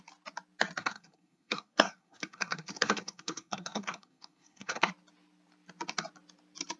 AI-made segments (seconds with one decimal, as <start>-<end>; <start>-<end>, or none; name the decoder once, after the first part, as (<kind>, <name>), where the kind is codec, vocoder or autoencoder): 0.8-4.9 (codec, SNAC)

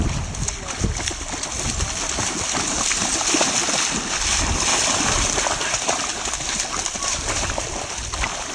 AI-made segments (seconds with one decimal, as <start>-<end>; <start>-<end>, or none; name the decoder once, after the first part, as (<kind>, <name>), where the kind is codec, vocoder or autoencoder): none

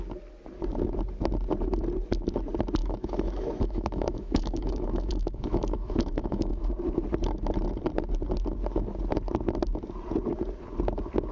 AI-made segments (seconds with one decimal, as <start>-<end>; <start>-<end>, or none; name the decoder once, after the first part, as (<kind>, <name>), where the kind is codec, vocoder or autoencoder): 2.8-6.7 (autoencoder, DAC-VAE)

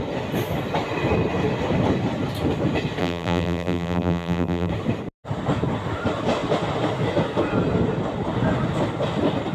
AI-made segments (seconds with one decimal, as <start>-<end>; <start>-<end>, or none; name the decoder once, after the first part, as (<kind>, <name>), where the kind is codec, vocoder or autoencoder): 3.0-4.7 (vocoder, BigVGAN v2)

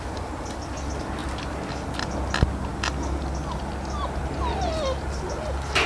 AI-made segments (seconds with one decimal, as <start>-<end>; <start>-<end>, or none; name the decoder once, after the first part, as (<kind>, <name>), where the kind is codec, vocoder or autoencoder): none

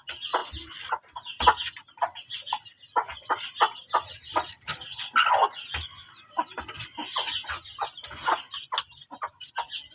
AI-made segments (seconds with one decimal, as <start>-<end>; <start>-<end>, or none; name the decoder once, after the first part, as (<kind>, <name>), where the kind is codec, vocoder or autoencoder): none

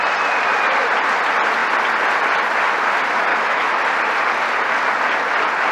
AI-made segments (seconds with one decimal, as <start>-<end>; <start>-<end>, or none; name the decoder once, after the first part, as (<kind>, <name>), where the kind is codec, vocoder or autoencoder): 3.3-3.8 (autoencoder, DAC-VAE)